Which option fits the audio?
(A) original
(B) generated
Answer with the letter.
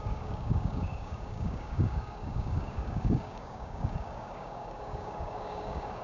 B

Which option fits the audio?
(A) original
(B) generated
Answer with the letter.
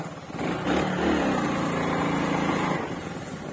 A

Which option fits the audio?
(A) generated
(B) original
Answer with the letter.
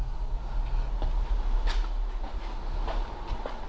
B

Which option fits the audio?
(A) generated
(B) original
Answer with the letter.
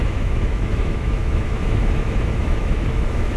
A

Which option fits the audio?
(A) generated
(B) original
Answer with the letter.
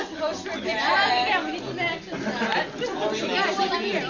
B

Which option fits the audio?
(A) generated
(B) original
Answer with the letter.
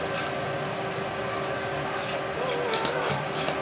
B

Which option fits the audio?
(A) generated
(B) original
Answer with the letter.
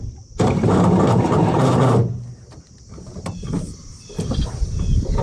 A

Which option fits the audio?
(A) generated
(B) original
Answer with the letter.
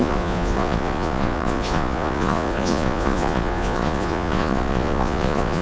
A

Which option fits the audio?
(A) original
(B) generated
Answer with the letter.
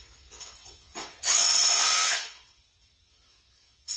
B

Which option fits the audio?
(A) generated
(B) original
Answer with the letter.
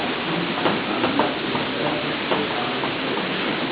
B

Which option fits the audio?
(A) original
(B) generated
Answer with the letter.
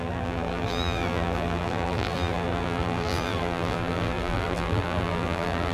B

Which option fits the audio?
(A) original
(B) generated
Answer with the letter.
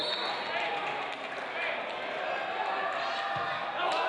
A